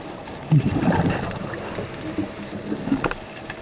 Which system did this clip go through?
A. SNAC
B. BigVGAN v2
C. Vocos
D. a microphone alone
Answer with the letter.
D